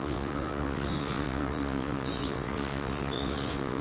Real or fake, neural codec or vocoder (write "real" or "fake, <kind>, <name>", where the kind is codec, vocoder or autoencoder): fake, vocoder, WaveNeXt